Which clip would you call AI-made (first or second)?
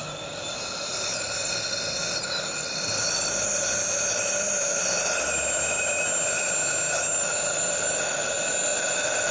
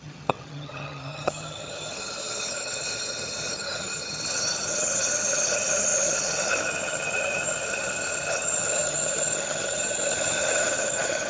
second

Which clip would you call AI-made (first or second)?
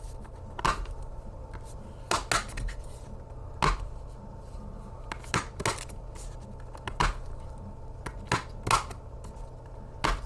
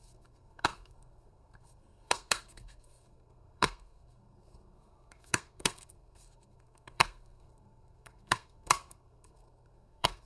second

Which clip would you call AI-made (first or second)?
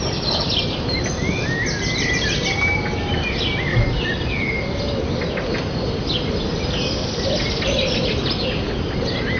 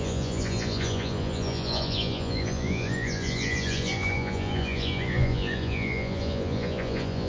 second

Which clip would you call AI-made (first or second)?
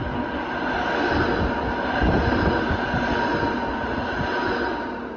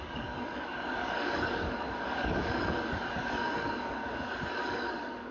second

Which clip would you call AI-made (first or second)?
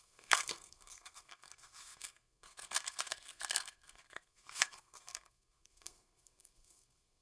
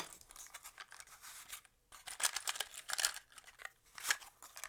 first